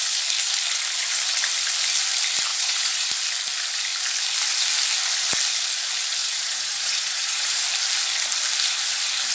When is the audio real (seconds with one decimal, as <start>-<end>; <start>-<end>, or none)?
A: 0.0-2.5; 3.1-6.2; 7.6-9.3